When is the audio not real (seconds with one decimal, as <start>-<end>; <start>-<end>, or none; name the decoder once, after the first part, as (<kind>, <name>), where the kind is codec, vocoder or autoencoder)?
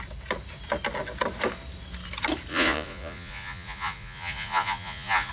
2.5-5.3 (vocoder, Vocos)